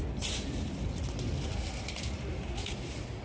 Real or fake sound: real